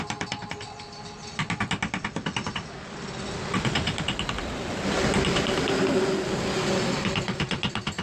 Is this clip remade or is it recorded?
recorded